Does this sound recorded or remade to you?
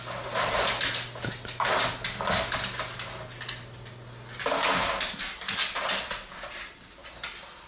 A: recorded